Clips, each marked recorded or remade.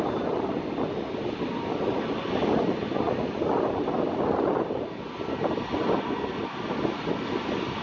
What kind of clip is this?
recorded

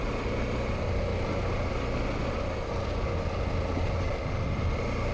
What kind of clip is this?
recorded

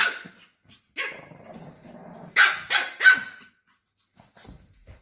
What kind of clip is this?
recorded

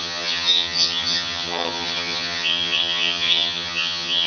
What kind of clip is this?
remade